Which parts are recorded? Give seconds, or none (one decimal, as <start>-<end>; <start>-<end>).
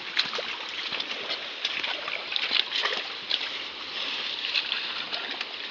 0.0-5.7